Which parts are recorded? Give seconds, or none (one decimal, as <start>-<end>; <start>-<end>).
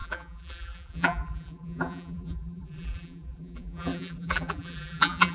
none